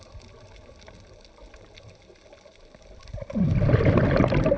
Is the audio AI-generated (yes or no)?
no